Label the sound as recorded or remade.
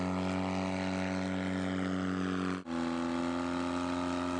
recorded